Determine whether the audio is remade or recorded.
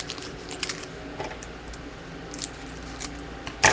recorded